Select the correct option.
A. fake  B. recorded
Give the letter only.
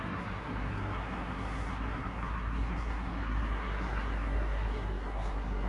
A